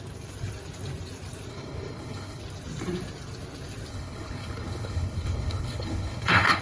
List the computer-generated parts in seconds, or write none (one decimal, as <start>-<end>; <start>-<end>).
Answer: 1.5-2.4; 3.9-6.6